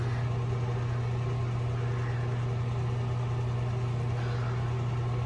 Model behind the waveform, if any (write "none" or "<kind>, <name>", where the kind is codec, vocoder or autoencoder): none